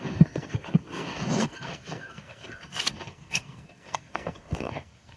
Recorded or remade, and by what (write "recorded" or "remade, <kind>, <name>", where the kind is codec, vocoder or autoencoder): remade, codec, SNAC